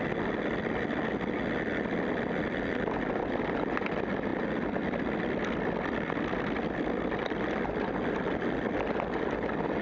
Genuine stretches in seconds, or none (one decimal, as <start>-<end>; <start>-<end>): 0.0-9.8